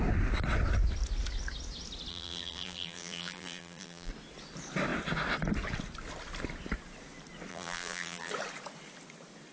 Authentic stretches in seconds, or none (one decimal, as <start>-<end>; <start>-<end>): 0.0-2.1; 4.1-7.5; 8.3-9.5